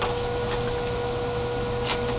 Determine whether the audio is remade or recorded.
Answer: recorded